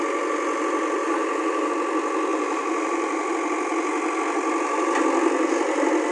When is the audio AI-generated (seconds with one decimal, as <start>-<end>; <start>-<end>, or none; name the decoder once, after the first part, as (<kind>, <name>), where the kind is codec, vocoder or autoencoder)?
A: 1.0-1.7 (vocoder, BigVGAN v2); 2.3-3.3